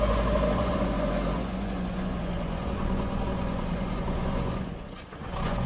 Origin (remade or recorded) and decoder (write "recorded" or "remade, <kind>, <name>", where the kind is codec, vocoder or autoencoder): remade, vocoder, Vocos